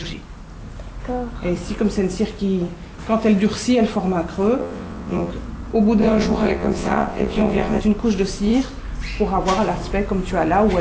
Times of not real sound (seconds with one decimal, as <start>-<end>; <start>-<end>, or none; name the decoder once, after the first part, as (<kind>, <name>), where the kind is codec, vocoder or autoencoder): 4.6-5.3 (vocoder, WaveNeXt); 6.0-7.8